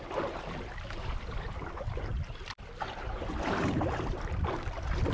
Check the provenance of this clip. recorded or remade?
recorded